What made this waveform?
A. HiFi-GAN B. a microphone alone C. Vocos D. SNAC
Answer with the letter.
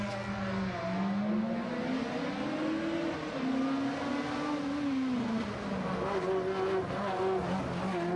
B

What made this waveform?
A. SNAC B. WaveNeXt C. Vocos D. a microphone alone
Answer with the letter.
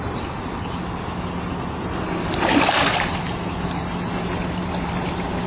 D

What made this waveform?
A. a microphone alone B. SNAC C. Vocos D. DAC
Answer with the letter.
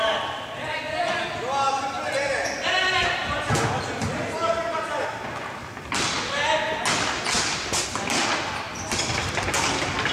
A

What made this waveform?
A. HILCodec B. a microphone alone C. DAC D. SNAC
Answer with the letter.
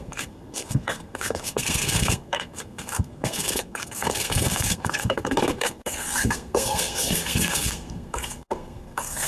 D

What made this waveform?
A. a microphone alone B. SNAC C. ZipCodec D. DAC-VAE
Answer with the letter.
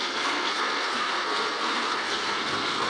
B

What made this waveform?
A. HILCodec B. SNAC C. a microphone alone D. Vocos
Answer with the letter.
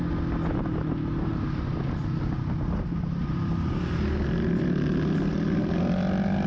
C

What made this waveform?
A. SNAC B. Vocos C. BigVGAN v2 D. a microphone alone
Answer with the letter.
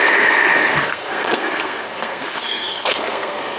A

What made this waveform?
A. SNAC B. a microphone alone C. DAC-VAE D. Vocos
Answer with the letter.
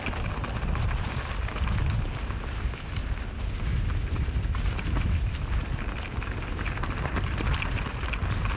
B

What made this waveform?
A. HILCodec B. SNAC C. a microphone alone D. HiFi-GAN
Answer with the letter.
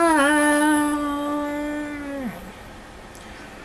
C